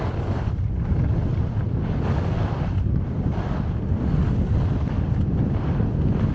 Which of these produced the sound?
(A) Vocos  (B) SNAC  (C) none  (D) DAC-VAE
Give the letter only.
C